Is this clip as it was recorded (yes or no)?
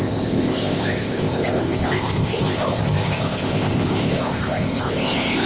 no